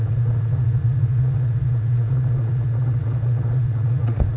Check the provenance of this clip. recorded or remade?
remade